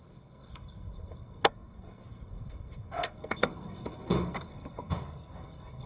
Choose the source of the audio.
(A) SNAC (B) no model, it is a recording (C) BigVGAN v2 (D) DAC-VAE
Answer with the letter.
A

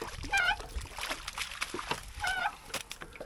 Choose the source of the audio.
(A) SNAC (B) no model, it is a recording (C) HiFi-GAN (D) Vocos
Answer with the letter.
B